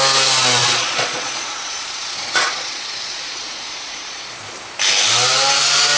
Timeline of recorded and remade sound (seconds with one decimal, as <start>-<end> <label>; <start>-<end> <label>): 0.0-0.6 recorded; 0.6-4.2 remade; 4.2-6.0 recorded